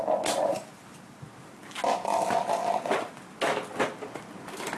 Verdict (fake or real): real